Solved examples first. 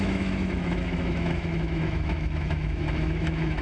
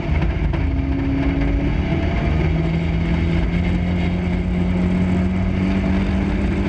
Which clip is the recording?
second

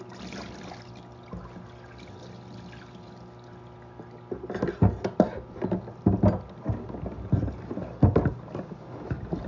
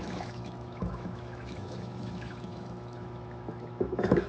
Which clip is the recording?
first